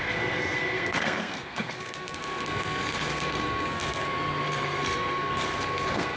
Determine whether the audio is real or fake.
fake